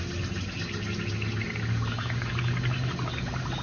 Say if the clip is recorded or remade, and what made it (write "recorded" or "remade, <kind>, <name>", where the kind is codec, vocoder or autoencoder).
recorded